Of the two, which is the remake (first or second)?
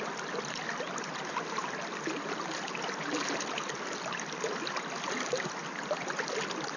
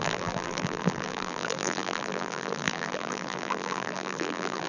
second